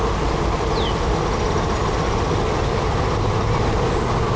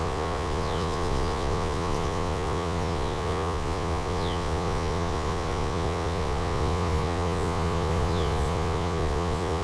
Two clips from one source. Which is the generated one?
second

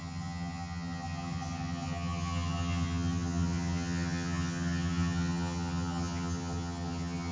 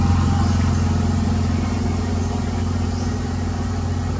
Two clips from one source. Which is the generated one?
first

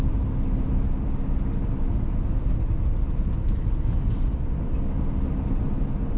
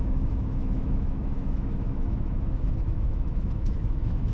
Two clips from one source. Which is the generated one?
second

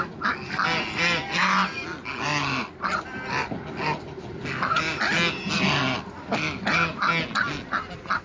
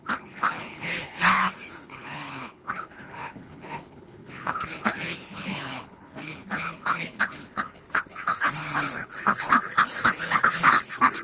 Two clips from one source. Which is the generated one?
second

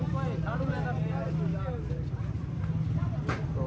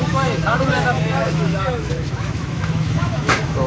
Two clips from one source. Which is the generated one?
second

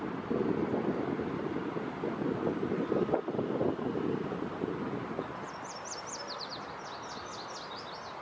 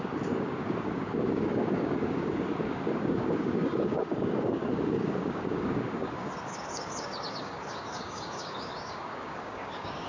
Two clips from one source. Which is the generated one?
second